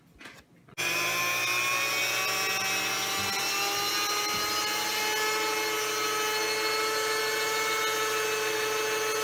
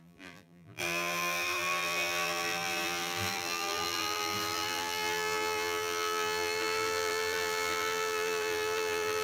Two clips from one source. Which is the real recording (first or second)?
first